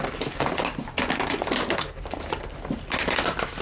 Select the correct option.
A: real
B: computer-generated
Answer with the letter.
A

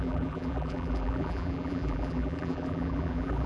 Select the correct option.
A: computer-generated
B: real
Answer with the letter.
A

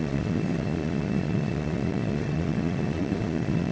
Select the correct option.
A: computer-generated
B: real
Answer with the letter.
A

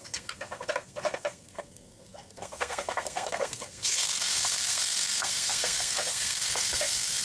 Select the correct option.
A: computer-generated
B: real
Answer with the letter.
A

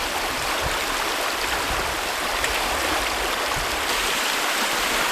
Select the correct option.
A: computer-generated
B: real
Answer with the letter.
A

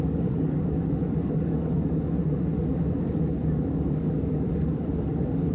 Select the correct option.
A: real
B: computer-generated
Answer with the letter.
B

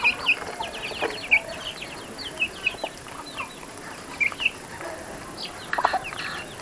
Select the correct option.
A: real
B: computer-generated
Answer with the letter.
A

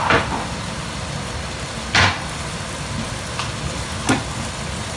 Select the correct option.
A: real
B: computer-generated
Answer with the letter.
A